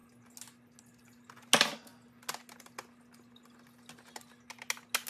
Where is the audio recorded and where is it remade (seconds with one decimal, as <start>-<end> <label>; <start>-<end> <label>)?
0.0-5.1 recorded